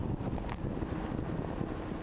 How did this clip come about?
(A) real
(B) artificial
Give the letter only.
A